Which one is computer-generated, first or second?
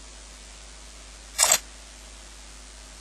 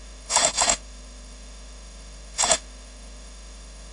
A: second